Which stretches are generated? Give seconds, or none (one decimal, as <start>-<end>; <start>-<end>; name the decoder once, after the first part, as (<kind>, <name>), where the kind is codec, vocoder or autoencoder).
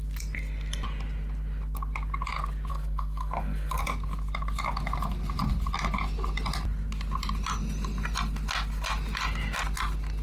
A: 2.7-3.8 (codec, SNAC)